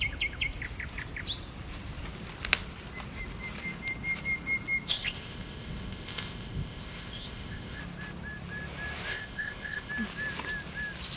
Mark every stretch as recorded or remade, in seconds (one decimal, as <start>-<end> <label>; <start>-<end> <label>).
0.0-4.9 recorded; 4.9-7.8 remade; 7.8-9.1 recorded; 9.1-9.9 remade; 9.9-11.2 recorded